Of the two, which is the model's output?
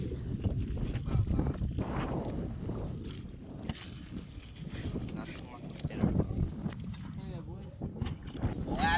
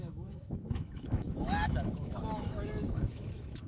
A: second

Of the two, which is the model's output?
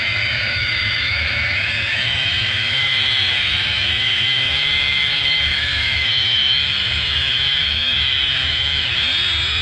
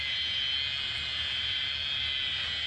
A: first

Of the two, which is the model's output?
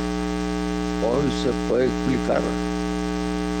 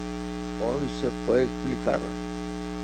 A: second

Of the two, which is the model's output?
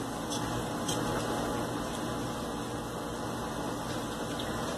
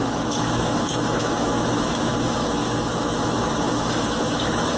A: second